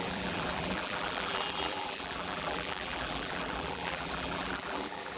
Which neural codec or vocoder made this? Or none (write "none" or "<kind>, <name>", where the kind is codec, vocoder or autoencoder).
vocoder, BigVGAN v2